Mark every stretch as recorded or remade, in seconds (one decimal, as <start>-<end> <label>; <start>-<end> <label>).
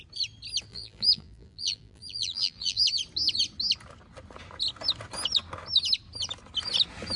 0.0-0.7 recorded; 0.7-2.8 remade; 2.8-7.2 recorded